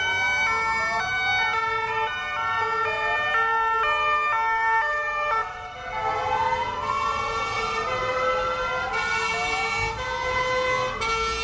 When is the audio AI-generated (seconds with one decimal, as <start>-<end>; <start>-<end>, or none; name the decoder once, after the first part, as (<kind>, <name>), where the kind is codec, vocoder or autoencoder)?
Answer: none